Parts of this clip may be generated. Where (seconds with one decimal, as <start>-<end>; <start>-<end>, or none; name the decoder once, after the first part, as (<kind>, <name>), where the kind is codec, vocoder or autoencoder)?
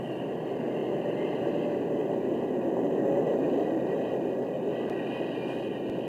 0.8-1.4 (vocoder, BigVGAN v2); 3.3-4.1